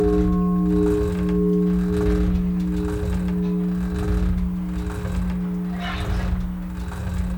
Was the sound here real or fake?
real